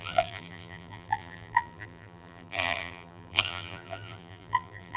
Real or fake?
fake